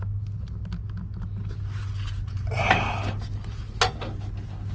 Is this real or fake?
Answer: real